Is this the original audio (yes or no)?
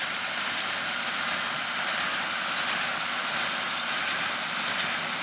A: yes